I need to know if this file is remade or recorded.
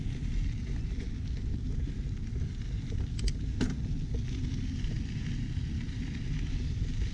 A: recorded